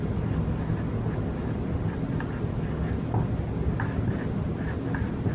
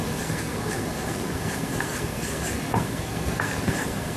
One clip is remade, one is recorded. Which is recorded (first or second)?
first